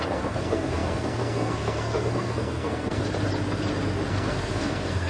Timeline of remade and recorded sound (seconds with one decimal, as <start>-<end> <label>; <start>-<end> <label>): 0.0-3.0 remade; 3.0-4.1 recorded; 4.1-5.1 remade